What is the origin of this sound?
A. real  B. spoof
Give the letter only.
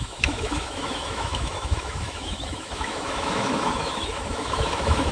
B